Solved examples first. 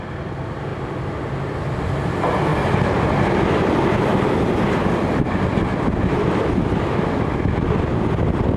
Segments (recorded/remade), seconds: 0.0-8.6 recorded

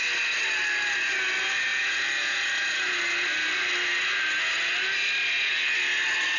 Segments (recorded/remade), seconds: 0.0-6.4 recorded

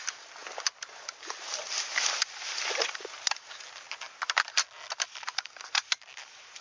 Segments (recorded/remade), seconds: 0.0-6.6 recorded

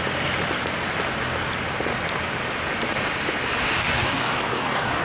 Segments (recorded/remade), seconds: 0.0-3.8 recorded; 3.8-5.0 remade